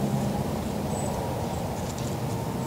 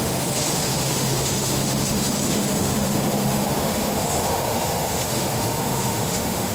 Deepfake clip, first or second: second